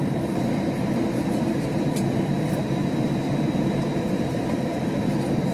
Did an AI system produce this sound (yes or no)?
yes